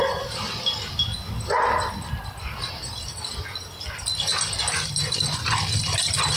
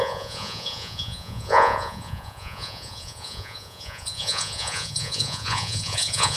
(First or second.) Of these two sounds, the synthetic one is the second